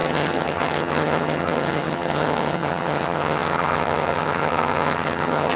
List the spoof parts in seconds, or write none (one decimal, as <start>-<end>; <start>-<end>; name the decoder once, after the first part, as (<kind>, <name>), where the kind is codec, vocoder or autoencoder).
0.0-5.6 (vocoder, HiFi-GAN)